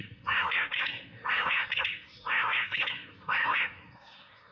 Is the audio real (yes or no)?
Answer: no